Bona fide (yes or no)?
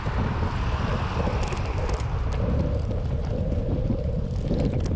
yes